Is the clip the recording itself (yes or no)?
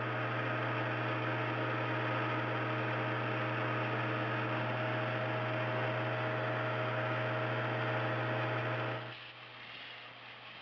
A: yes